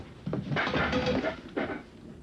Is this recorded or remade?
recorded